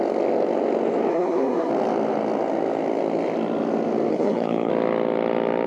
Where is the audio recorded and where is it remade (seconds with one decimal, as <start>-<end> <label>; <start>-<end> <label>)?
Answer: 0.0-1.1 recorded; 1.1-1.7 remade; 1.7-4.1 recorded; 4.1-4.7 remade; 4.7-5.7 recorded